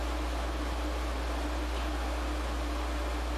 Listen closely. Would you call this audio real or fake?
real